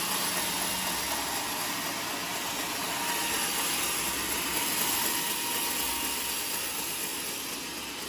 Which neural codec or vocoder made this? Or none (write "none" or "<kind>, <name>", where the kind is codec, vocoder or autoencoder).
none